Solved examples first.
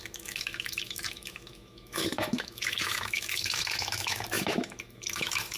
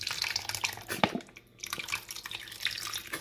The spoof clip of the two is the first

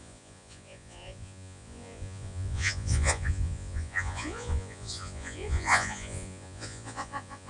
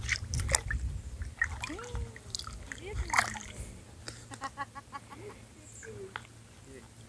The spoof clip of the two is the first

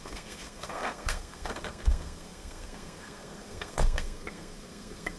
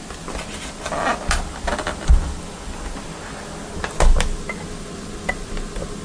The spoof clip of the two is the first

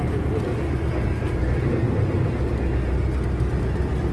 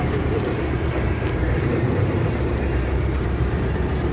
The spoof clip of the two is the second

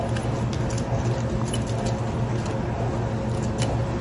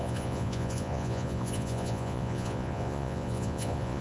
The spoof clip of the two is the second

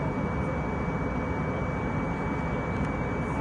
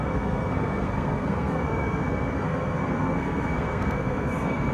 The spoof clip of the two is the second